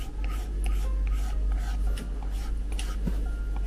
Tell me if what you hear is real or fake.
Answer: real